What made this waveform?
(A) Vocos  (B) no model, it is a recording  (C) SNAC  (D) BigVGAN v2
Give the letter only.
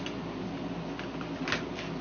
B